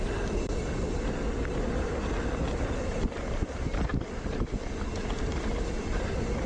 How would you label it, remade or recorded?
remade